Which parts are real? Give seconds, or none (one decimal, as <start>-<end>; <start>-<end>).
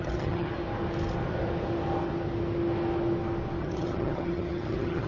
0.5-3.6